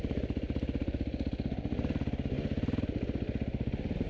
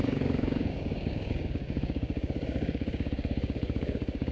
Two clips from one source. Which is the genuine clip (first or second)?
first